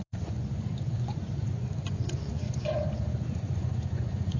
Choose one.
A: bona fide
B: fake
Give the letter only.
B